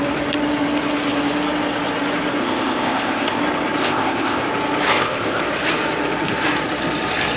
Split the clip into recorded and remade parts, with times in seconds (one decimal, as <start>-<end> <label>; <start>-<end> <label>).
0.0-2.4 recorded; 2.4-3.4 remade; 3.4-3.8 recorded; 3.8-4.4 remade; 4.4-4.9 recorded; 4.9-5.4 remade; 5.4-7.4 recorded